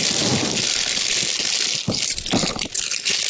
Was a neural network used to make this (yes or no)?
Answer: no